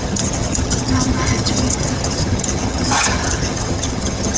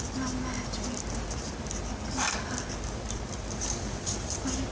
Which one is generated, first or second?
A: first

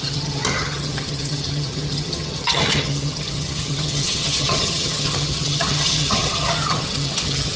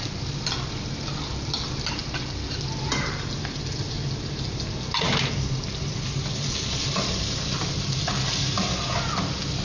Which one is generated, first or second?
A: first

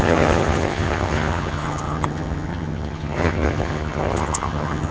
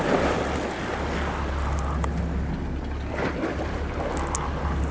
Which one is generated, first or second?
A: first